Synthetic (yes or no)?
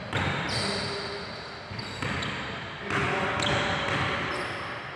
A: no